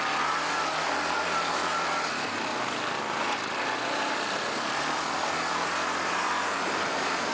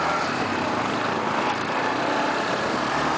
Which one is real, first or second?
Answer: first